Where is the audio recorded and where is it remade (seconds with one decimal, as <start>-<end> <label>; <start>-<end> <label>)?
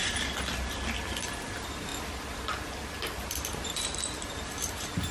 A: 0.0-5.1 recorded